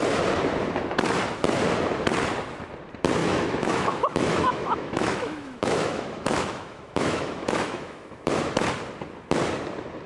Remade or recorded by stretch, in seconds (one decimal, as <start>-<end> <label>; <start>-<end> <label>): 0.0-3.2 recorded; 3.2-8.4 remade; 8.4-10.1 recorded